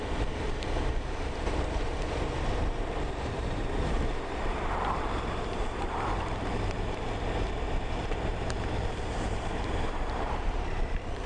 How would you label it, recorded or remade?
remade